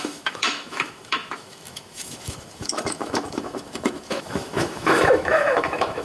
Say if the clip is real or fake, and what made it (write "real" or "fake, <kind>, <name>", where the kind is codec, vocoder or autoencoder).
fake, autoencoder, DAC-VAE